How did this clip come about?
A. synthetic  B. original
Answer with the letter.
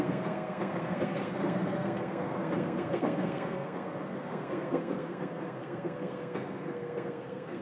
A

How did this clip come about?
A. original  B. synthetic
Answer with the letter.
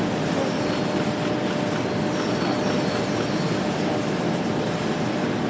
A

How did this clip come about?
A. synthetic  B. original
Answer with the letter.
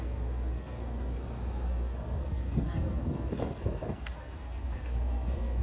A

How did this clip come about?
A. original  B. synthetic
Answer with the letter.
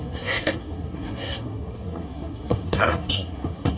B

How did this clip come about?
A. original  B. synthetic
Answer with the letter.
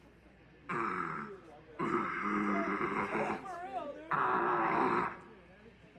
A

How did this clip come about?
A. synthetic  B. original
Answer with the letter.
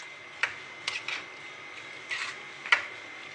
B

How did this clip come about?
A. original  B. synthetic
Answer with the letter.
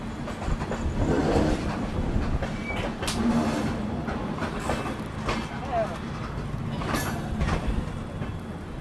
A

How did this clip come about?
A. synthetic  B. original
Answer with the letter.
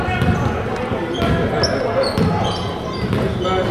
B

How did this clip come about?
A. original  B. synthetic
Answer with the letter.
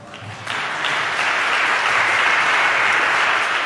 A